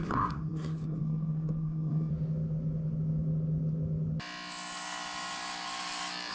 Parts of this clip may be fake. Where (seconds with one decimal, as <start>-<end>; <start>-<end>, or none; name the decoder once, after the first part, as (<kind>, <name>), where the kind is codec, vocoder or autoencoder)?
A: 0.0-2.1 (codec, SNAC)